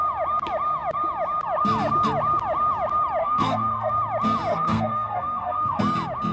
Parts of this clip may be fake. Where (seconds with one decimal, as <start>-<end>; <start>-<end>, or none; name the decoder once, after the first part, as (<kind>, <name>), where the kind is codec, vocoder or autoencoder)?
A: 3.2-3.9 (codec, SNAC); 4.5-5.8